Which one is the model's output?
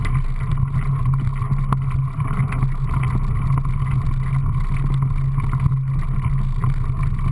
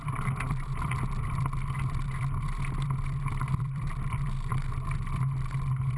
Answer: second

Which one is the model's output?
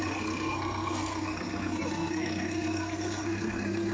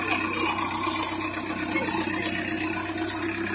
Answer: first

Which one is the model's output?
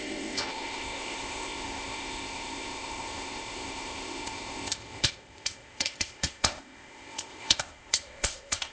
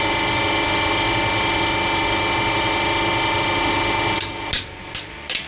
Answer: first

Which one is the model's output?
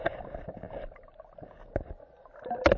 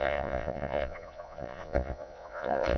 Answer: second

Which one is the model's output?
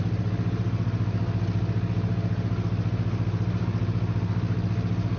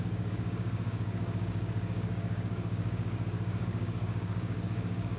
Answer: second